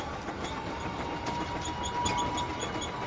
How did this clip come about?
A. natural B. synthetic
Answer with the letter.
A